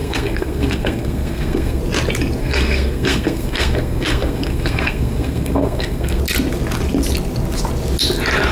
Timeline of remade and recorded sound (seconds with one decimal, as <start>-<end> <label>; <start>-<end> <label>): 0.0-1.8 remade; 1.8-2.4 recorded; 2.4-6.2 remade; 6.2-8.5 recorded